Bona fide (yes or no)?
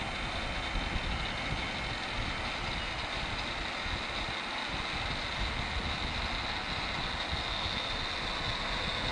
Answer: yes